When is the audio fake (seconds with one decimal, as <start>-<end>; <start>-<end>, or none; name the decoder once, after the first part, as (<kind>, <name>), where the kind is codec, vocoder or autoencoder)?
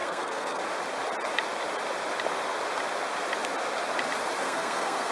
0.0-0.6 (codec, SNAC); 4.4-5.1